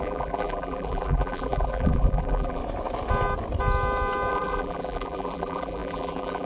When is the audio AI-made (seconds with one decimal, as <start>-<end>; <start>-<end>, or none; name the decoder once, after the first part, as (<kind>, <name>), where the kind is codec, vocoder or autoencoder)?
0.0-2.6 (vocoder, BigVGAN v2); 4.3-6.5